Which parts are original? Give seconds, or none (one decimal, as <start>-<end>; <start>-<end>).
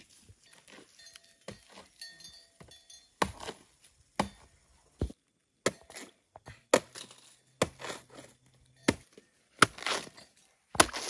0.0-11.1